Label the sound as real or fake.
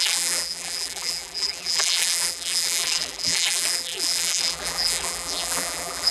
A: fake